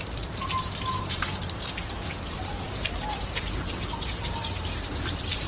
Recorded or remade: remade